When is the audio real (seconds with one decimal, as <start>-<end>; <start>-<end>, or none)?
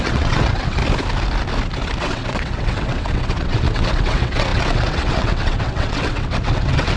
0.8-2.0